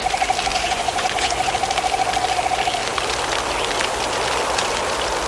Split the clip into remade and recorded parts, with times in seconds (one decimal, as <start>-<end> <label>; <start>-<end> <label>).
0.0-0.5 recorded; 0.5-1.5 remade; 1.5-5.3 recorded